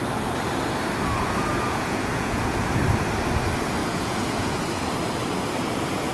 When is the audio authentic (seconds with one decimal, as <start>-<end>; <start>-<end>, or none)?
0.0-1.5; 2.8-3.8; 4.9-6.1